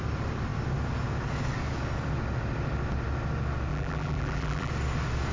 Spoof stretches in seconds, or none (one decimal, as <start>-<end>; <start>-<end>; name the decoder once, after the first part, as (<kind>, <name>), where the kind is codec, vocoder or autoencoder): 3.7-4.7 (vocoder, BigVGAN v2)